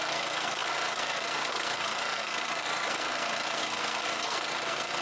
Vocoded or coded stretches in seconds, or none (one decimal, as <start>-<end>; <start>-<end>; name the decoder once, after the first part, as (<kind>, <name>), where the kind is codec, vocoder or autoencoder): 0.0-5.0 (codec, SNAC)